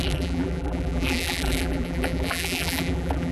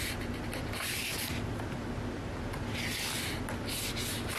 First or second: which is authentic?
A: second